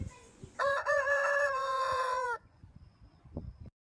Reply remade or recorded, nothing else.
remade